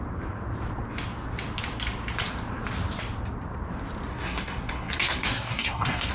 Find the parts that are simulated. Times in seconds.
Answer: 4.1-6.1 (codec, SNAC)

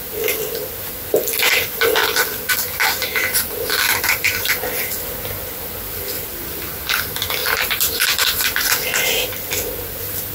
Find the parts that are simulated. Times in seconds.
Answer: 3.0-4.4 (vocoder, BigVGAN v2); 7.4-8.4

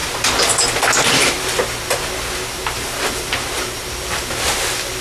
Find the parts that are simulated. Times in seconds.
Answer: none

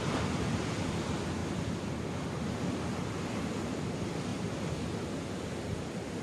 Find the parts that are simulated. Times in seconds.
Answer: none

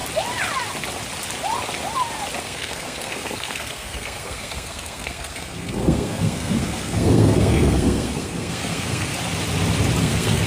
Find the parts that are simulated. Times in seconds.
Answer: 2.4-9.1 (codec, SNAC); 10.0-10.5